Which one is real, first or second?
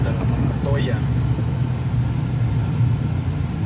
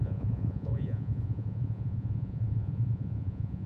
first